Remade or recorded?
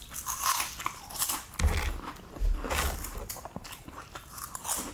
recorded